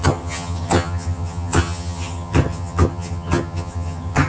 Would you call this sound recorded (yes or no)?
no